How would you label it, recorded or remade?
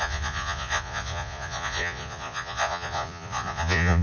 remade